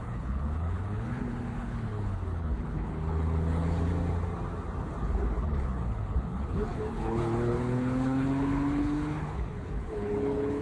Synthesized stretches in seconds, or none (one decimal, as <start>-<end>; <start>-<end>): 0.0-3.9; 5.0-10.6